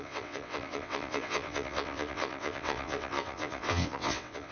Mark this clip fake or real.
fake